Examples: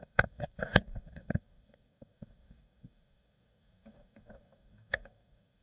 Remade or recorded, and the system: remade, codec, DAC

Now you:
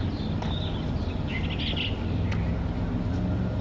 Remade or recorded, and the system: recorded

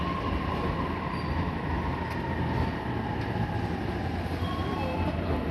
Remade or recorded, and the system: recorded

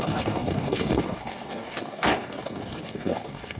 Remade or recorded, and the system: remade, codec, DAC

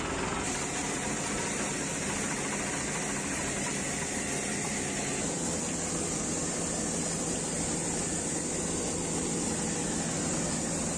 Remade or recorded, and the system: recorded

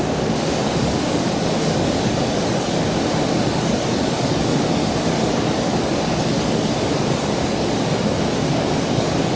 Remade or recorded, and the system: remade, codec, DAC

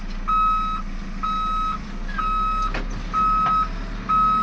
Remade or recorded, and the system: recorded